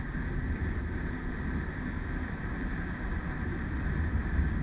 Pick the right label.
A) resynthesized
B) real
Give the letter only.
B